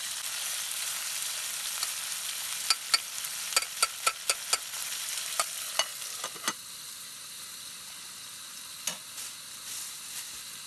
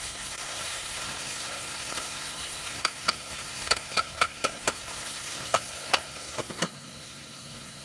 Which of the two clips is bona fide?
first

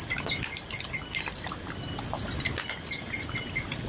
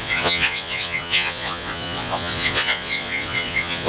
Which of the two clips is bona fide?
first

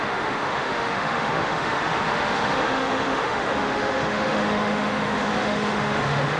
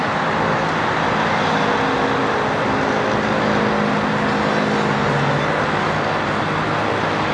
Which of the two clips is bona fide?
second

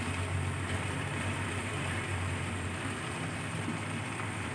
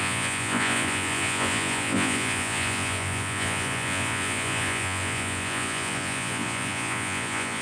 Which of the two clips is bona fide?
first